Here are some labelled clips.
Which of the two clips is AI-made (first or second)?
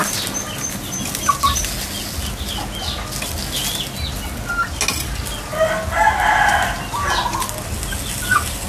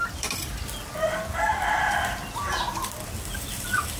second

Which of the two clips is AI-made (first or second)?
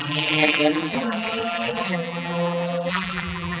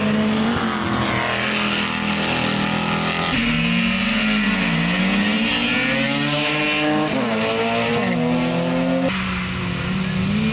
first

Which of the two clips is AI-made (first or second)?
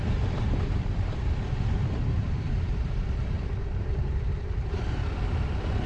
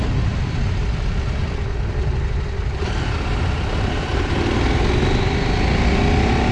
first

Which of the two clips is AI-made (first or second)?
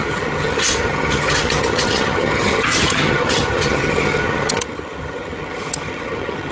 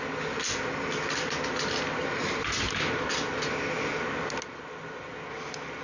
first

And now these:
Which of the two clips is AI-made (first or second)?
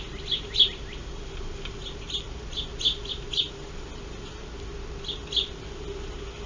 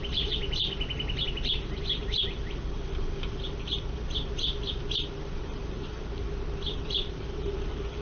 second